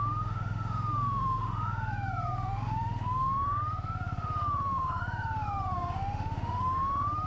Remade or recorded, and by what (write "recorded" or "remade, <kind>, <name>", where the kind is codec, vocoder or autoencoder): remade, autoencoder, DAC-VAE